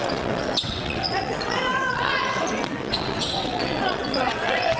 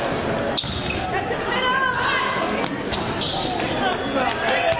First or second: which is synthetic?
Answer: first